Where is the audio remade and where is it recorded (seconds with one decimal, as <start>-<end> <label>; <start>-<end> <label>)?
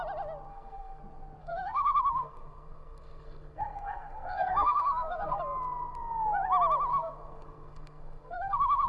0.0-0.5 recorded; 0.5-1.0 remade; 1.0-1.4 recorded; 1.4-5.4 remade; 5.4-6.9 recorded; 6.9-8.9 remade